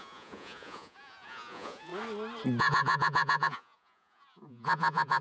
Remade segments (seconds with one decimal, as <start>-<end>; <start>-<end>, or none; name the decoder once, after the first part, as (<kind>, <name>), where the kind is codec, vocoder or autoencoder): 0.0-1.9 (vocoder, Vocos); 2.6-5.2